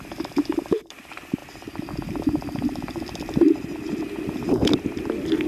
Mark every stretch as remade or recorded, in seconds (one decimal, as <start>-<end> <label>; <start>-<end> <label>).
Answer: 0.0-5.5 recorded